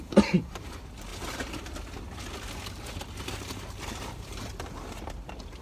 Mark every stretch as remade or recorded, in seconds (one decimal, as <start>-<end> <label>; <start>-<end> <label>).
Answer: 0.0-1.1 remade; 1.1-3.8 recorded; 3.8-5.6 remade